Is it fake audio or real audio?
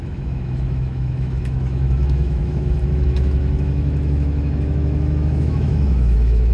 fake